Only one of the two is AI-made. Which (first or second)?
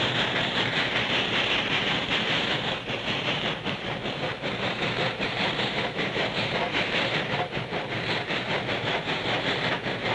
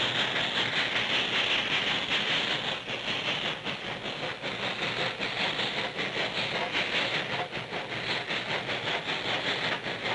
first